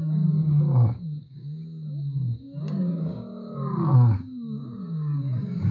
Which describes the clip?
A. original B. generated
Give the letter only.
B